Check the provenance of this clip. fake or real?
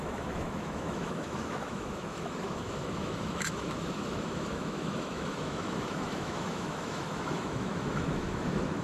fake